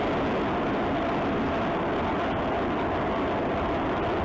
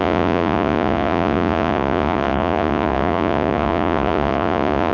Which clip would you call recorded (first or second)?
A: first